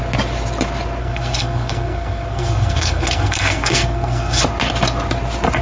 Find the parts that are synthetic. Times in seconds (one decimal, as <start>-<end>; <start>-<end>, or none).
1.0-4.4